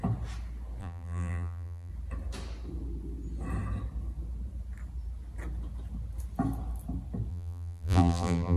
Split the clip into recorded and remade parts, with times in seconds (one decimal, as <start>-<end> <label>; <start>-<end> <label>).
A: 0.0-0.8 recorded; 0.8-1.9 remade; 1.9-7.3 recorded; 7.3-8.6 remade